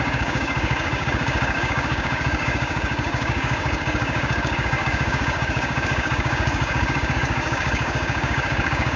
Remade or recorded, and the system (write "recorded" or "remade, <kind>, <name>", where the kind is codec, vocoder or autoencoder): remade, codec, DAC